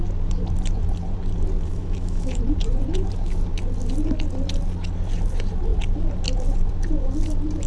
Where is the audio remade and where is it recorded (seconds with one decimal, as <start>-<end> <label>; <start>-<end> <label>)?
0.0-1.7 recorded; 1.7-2.4 remade; 2.4-7.7 recorded